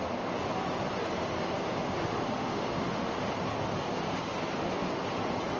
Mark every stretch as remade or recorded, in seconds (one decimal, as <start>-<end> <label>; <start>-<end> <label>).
0.0-2.0 recorded; 2.0-3.2 remade; 3.2-5.6 recorded